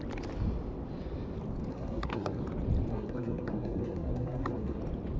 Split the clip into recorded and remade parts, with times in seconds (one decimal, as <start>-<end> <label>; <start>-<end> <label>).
0.0-1.7 recorded; 1.7-2.4 remade; 2.4-2.9 recorded; 2.9-4.8 remade; 4.8-5.2 recorded